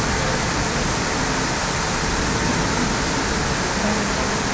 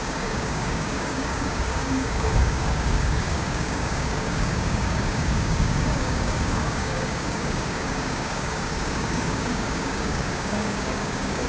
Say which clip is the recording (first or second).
first